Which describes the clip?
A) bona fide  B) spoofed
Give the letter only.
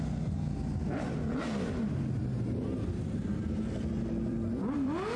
A